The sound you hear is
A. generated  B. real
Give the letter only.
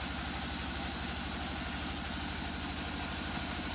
B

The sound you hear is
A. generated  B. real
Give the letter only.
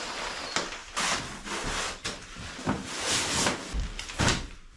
B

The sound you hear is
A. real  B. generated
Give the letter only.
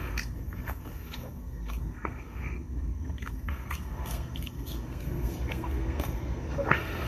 B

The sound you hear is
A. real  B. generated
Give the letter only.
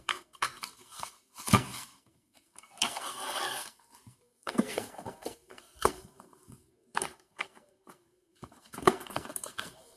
B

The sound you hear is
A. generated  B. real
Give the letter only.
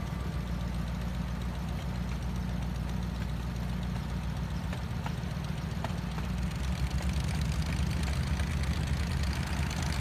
B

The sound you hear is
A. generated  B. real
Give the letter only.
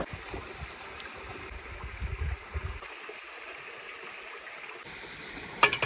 B